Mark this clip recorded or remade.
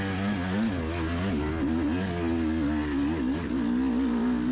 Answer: recorded